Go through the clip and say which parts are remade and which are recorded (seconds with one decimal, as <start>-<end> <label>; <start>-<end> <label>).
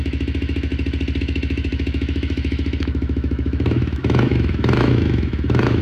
0.0-0.7 remade; 0.7-1.2 recorded; 1.2-5.8 remade